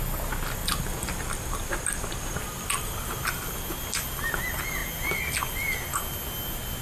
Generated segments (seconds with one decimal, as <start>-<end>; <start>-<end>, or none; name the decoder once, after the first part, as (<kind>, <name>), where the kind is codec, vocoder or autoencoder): 0.6-2.1 (vocoder, BigVGAN v2)